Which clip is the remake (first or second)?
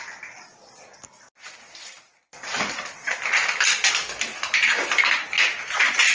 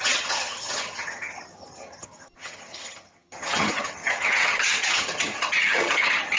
second